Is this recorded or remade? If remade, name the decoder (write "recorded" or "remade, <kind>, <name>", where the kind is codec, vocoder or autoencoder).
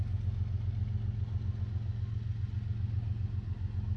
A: recorded